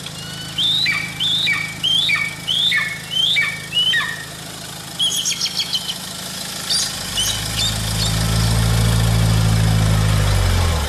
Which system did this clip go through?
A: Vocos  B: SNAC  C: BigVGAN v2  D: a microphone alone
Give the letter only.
D